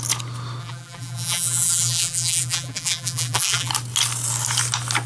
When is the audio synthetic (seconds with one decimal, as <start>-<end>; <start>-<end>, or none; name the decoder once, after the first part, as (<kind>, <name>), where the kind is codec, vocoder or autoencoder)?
0.6-3.7 (vocoder, BigVGAN v2)